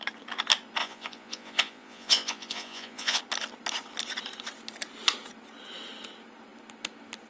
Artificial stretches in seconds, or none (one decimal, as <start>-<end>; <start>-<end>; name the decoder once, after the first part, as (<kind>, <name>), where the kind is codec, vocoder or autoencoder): 0.8-3.2 (vocoder, Vocos)